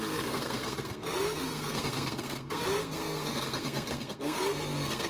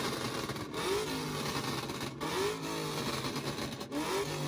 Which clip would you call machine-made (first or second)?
first